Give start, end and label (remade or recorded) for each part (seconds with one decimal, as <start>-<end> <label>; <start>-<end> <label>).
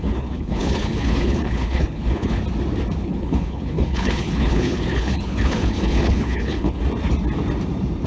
0.0-2.4 remade; 2.4-3.0 recorded; 3.0-6.8 remade; 6.8-8.1 recorded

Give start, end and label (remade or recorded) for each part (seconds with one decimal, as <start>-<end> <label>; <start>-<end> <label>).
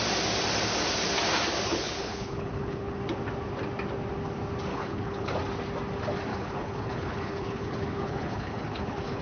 0.0-1.7 recorded; 1.7-3.0 remade; 3.0-4.7 recorded; 4.7-5.3 remade; 5.3-6.3 recorded; 6.3-9.2 remade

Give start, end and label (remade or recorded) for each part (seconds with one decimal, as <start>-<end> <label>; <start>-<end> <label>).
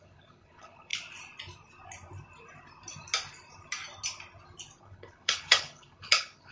0.0-0.9 remade; 0.9-4.8 recorded; 4.8-6.5 remade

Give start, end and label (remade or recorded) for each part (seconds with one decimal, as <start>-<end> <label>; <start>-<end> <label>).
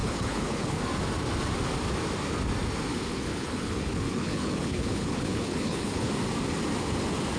0.0-0.8 remade; 0.8-2.9 recorded; 2.9-6.1 remade; 6.1-7.4 recorded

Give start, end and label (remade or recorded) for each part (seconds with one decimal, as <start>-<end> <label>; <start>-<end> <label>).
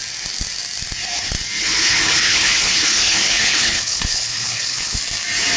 0.0-1.6 recorded; 1.6-5.0 remade; 5.0-5.6 recorded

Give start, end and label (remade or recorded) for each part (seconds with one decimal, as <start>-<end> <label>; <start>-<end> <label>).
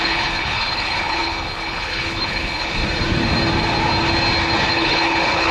0.0-2.8 remade; 2.8-4.7 recorded; 4.7-5.5 remade